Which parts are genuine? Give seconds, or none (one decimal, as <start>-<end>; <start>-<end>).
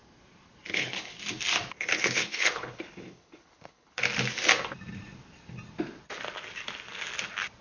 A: 0.0-0.7; 1.1-1.8; 4.0-7.6